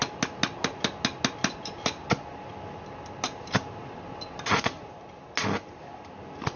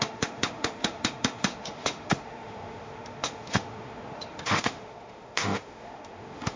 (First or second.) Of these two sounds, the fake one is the second